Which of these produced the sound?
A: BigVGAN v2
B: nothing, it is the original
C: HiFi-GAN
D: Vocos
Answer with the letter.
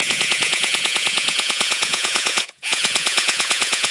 D